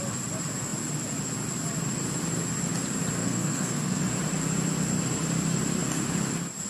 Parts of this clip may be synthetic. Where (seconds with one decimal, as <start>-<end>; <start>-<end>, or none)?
3.2-4.0